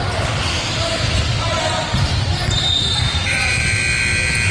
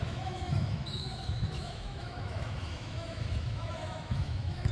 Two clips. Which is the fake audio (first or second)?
second